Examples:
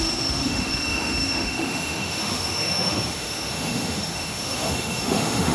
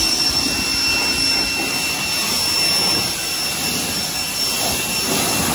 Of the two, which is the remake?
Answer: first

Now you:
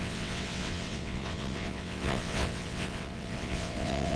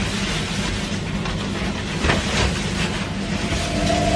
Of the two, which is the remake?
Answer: first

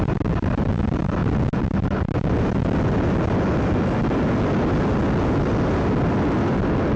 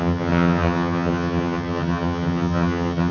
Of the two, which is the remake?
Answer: second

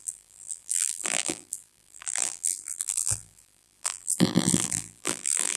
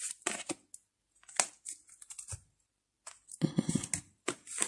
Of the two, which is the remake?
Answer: first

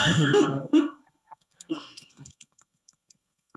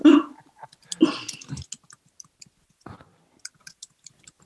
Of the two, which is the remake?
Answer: first